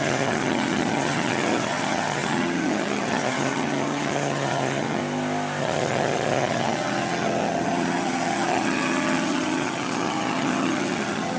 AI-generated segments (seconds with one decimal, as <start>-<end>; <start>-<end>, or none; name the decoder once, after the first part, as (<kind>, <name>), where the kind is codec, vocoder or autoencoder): 0.0-5.0 (vocoder, HiFi-GAN); 5.6-11.4